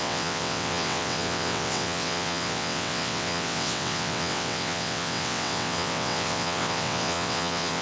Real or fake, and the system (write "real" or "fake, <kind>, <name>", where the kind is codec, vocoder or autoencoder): fake, vocoder, WaveNeXt